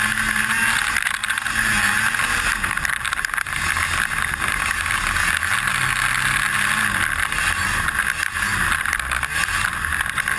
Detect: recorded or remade recorded